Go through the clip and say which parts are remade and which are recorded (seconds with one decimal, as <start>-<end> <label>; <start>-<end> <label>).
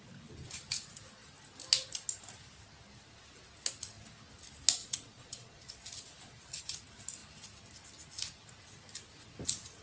0.0-4.8 recorded; 4.8-5.5 remade; 5.5-9.8 recorded